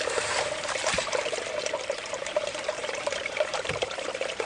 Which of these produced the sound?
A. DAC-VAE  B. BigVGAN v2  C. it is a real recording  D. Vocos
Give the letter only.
B